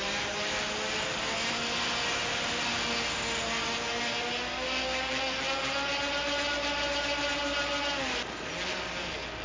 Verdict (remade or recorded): recorded